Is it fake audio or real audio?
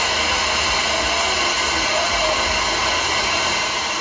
real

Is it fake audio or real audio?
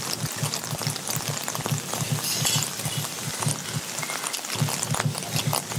real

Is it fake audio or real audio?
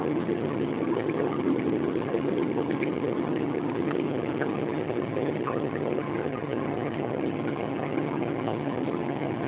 fake